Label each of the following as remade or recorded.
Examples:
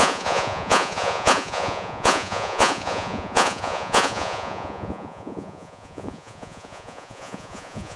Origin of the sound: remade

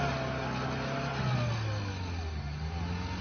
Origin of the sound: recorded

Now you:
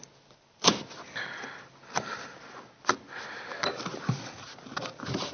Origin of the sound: recorded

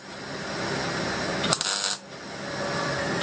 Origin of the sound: recorded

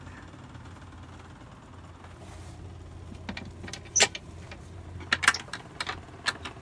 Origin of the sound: recorded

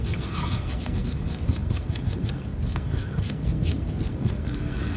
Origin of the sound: remade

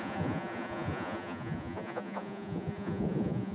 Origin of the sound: remade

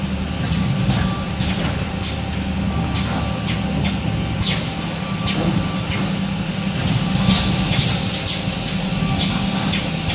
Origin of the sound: recorded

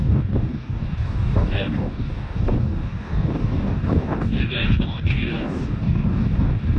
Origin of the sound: remade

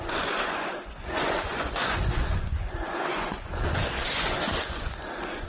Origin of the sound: remade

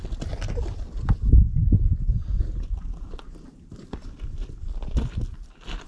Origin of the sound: recorded